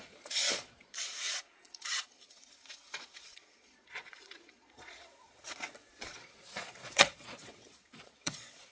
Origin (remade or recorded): remade